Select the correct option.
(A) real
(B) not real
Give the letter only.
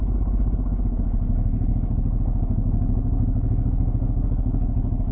B